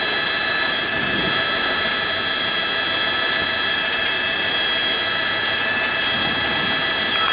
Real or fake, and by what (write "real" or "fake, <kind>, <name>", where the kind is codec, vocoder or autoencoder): real